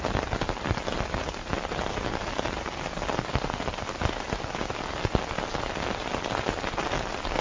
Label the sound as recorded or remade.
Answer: recorded